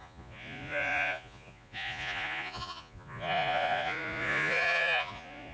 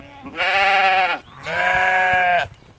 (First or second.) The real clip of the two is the second